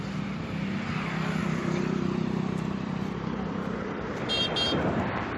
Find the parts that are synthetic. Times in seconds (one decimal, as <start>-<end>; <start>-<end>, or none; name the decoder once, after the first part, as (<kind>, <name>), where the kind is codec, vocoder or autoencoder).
1.4-4.3 (vocoder, BigVGAN v2)